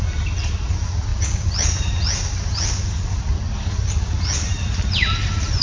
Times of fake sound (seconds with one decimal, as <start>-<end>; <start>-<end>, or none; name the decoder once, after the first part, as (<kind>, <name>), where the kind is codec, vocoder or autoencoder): none